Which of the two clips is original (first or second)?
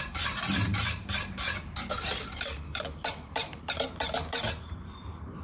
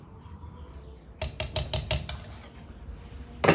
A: second